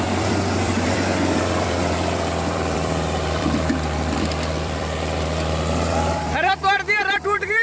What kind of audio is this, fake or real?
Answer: fake